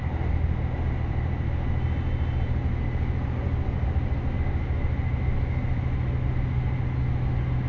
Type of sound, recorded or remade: recorded